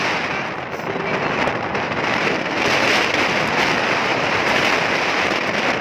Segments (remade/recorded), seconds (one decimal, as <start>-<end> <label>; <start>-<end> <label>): 0.0-1.7 recorded; 1.7-2.5 remade; 2.5-4.1 recorded; 4.1-4.7 remade; 4.7-5.8 recorded